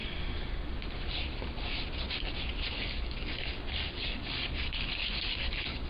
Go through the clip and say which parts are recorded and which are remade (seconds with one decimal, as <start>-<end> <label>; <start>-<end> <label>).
0.0-2.7 recorded; 2.7-5.9 remade